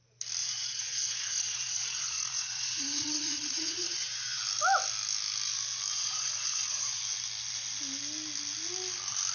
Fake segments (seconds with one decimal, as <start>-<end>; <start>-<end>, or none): 0.4-4.4; 5.9-7.0